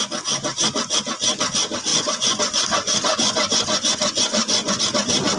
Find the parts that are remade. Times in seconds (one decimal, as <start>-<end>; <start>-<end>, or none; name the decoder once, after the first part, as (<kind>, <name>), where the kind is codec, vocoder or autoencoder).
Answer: 1.9-4.8 (vocoder, Vocos)